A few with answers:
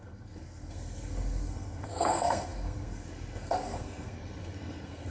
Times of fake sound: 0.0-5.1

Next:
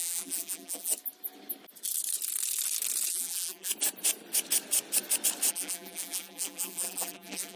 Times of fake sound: 0.0-0.9; 3.1-3.7; 5.5-7.6

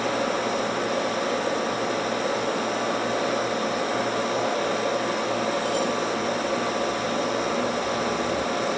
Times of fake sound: none

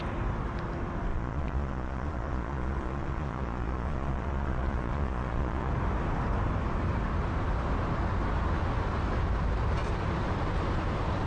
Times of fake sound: 1.1-5.7

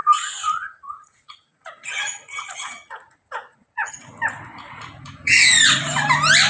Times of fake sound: 0.0-3.9; 4.5-5.8

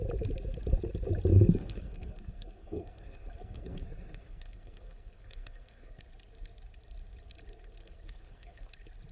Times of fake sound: 1.3-6.0; 7.8-8.7

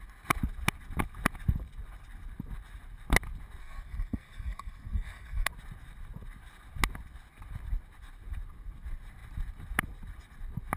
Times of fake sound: 3.6-5.5